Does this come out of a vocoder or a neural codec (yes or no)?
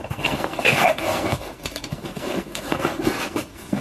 yes